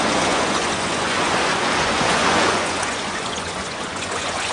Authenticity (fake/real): fake